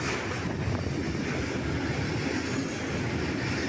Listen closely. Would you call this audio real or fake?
real